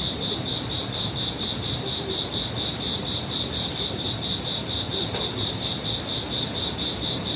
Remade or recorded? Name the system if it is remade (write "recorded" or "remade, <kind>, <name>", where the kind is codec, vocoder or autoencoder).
remade, vocoder, BigVGAN v2